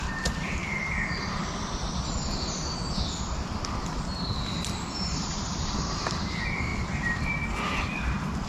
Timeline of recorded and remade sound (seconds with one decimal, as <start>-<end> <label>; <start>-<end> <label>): 0.0-8.5 recorded